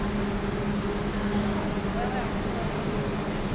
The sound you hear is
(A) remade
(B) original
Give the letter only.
B